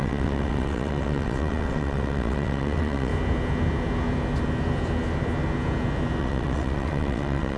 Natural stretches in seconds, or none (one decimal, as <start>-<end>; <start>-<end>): 3.1-6.2